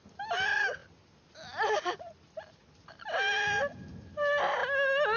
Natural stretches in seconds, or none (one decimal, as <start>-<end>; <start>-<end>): 0.0-5.2